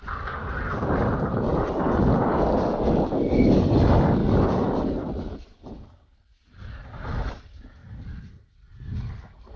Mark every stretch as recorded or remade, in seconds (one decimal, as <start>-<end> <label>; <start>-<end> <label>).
0.0-9.6 recorded